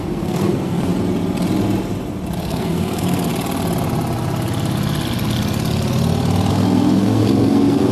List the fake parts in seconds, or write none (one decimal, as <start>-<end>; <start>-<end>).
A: 0.0-0.9; 2.4-3.3; 6.5-7.9